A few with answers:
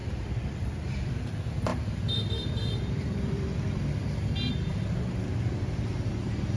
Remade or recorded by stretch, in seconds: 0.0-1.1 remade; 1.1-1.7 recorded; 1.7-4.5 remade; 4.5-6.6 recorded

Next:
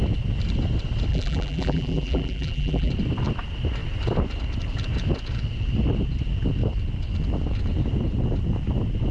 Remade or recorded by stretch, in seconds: 0.0-1.1 recorded; 1.1-2.9 remade; 2.9-9.1 recorded

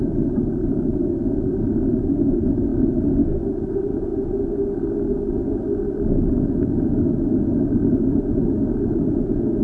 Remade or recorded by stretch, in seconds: 0.0-9.6 recorded

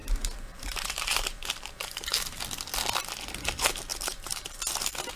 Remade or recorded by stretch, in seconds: 0.0-2.4 remade; 2.4-3.9 recorded; 3.9-4.5 remade; 4.5-5.2 recorded